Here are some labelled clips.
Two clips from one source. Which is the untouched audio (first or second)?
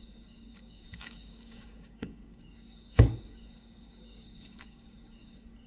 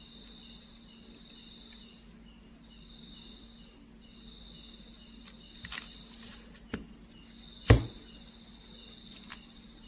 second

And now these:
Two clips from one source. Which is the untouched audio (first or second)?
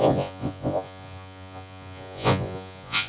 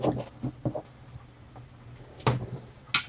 second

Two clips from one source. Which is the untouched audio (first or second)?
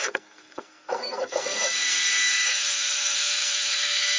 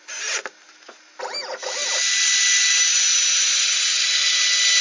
second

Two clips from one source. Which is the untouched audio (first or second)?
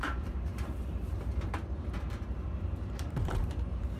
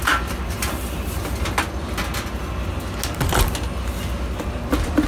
second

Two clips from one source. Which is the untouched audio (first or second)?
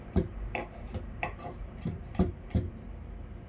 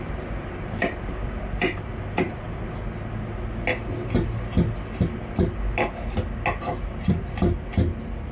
second